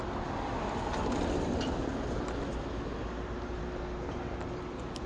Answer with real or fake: real